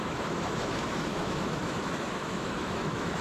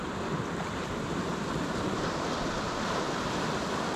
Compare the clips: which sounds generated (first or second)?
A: first